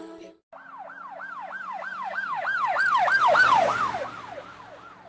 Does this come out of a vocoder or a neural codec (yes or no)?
no